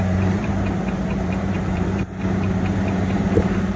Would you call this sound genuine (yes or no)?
no